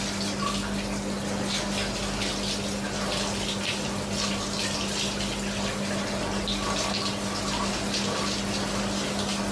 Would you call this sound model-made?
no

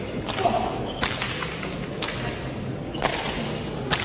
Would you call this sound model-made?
no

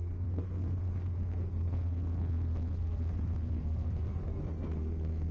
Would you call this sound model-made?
yes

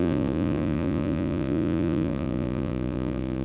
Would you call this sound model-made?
yes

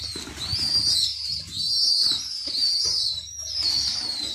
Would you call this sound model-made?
no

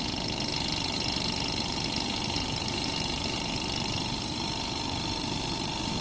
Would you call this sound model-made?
no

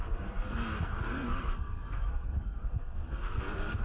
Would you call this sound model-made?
yes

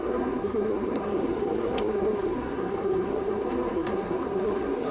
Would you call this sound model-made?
yes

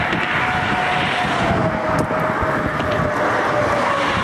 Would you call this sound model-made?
no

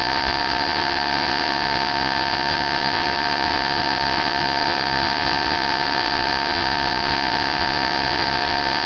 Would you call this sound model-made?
yes